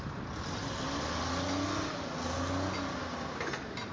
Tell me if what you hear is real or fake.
real